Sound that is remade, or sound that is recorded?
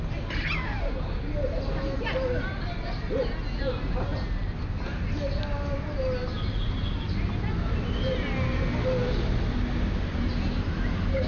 recorded